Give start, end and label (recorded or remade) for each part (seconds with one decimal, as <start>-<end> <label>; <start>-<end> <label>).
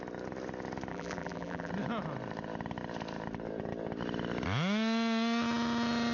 0.0-0.9 recorded; 0.9-1.7 remade; 1.7-6.1 recorded